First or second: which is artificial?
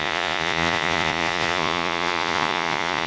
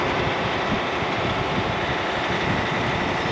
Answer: first